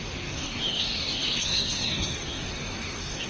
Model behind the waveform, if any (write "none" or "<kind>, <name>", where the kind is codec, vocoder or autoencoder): codec, SNAC